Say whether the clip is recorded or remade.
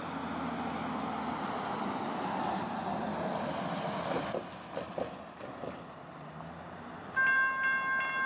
recorded